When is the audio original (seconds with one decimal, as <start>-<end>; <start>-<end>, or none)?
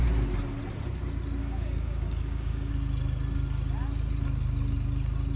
0.0-1.4; 2.7-5.4